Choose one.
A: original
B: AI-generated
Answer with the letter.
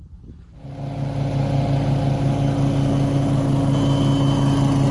A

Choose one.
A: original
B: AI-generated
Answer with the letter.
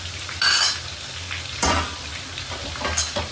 A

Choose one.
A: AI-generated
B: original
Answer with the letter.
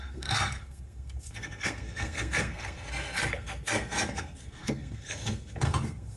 A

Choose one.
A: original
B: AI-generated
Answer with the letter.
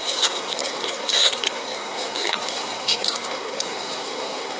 B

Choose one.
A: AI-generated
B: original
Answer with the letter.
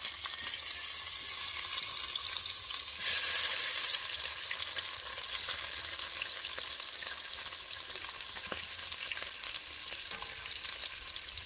B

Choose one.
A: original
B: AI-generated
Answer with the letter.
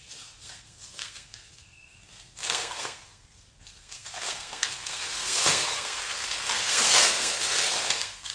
B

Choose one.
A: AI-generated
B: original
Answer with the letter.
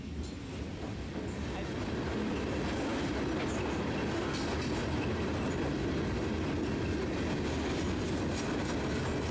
B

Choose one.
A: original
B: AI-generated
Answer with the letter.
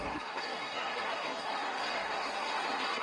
B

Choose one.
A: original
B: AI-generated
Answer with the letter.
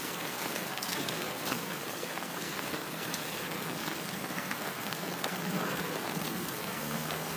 B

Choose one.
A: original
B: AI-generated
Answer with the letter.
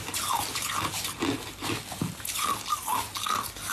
A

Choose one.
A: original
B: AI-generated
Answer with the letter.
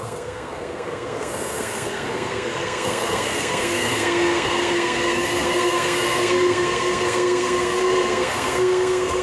B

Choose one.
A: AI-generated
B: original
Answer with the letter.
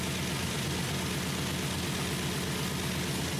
B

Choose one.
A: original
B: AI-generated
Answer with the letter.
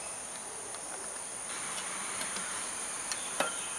A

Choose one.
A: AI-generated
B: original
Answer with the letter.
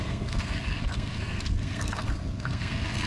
A